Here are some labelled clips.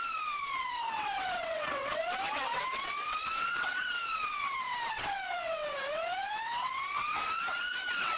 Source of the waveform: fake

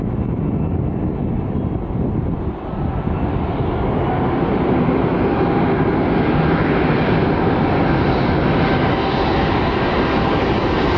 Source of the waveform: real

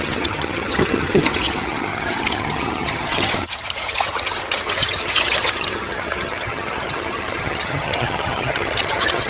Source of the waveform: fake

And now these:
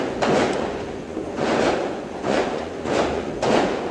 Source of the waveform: fake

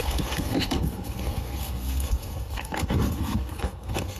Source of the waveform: fake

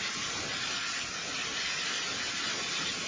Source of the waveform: real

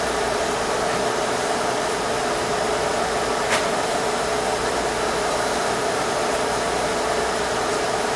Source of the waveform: fake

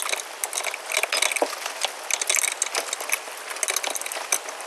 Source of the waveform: real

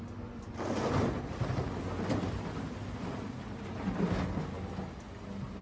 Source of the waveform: real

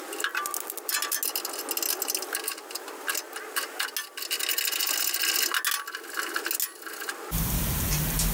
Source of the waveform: real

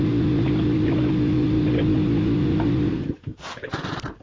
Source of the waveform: real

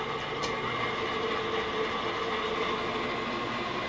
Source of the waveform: real